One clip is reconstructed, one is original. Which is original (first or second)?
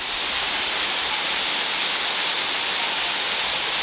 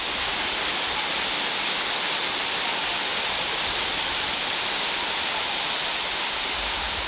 first